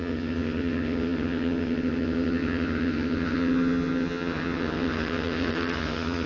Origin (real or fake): fake